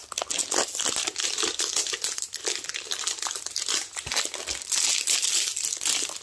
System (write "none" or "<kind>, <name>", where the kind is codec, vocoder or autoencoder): none